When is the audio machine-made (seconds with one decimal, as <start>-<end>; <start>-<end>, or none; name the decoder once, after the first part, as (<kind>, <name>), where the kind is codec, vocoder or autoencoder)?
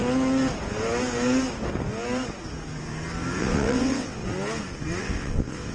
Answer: 3.4-4.2 (vocoder, WaveNeXt); 5.0-5.7